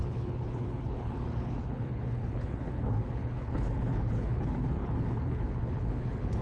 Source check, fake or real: fake